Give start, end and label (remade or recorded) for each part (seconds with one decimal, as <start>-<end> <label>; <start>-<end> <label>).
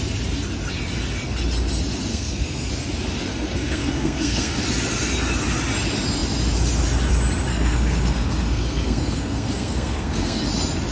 0.0-2.1 recorded; 2.1-2.7 remade; 2.7-3.3 recorded; 3.3-4.6 remade; 4.6-7.5 recorded; 7.5-10.4 remade; 10.4-10.9 recorded